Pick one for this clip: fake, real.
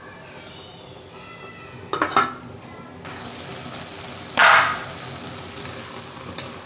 real